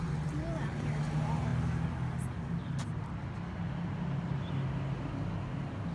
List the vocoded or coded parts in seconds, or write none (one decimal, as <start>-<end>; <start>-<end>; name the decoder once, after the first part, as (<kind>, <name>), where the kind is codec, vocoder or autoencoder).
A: none